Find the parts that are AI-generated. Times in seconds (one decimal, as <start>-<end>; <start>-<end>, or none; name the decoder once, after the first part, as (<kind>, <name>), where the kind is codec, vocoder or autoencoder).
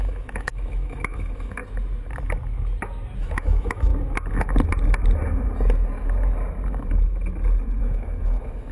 0.0-1.6 (autoencoder, DAC-VAE); 3.2-3.9; 7.8-8.7